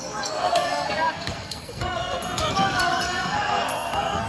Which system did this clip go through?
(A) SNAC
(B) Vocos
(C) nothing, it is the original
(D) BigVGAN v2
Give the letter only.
A